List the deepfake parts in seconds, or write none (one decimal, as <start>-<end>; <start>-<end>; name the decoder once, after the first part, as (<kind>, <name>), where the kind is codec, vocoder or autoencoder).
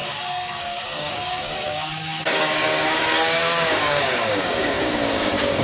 0.0-5.6 (codec, DAC)